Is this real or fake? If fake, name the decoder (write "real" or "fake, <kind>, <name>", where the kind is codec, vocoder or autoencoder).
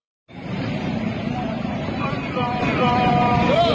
fake, vocoder, BigVGAN v2